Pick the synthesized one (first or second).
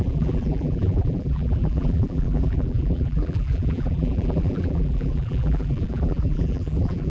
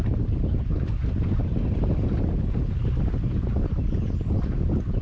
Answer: first